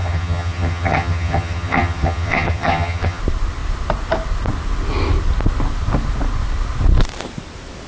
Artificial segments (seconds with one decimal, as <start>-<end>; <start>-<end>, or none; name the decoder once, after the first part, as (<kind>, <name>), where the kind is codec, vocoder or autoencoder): 0.0-3.2 (vocoder, HiFi-GAN)